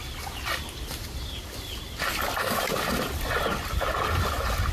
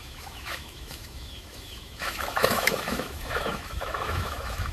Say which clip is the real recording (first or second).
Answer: first